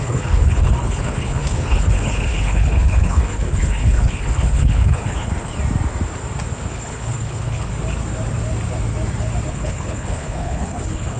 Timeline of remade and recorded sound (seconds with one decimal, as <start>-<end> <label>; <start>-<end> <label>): 0.0-5.5 remade; 5.5-6.7 recorded; 6.7-7.7 remade; 7.7-9.5 recorded; 9.5-11.2 remade